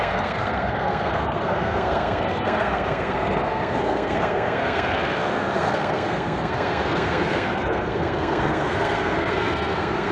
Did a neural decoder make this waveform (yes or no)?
yes